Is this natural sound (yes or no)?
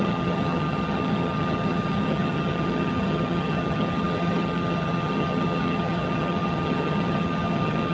no